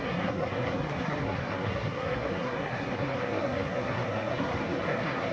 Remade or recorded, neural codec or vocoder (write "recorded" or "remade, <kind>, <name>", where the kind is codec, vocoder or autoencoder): remade, codec, SNAC